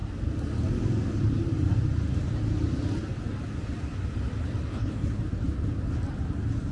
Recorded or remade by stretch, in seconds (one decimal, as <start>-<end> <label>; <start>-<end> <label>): 0.0-4.7 recorded; 4.7-5.2 remade; 5.2-6.7 recorded